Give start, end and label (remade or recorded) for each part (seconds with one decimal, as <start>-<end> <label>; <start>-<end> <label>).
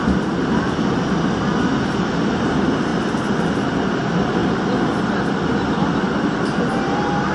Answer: 0.0-1.7 recorded; 1.7-2.5 remade; 2.5-2.9 recorded; 2.9-3.7 remade; 3.7-4.4 recorded; 4.4-7.3 remade